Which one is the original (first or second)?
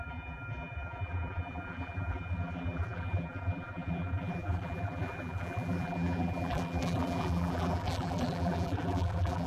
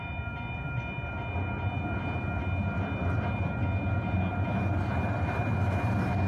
second